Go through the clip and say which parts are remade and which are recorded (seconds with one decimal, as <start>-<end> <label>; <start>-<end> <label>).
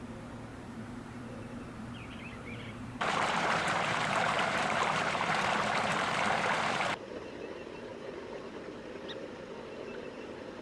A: 0.0-0.5 recorded; 0.5-5.5 remade; 5.5-10.6 recorded